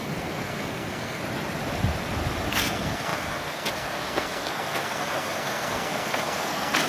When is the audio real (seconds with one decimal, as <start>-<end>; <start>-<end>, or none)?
1.2-2.5